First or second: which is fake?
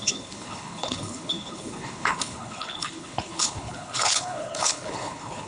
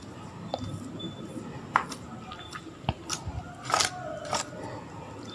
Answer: first